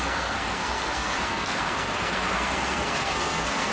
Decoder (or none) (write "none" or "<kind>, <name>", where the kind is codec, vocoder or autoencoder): codec, SNAC